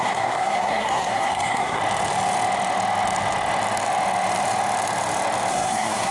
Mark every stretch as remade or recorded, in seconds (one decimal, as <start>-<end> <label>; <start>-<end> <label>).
0.0-1.8 remade; 1.8-5.5 recorded; 5.5-6.1 remade